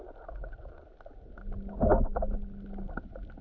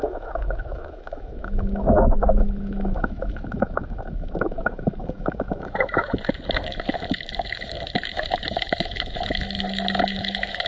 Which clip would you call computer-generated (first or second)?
second